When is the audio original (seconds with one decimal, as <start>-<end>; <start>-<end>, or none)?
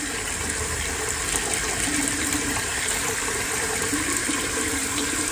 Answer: 0.0-1.9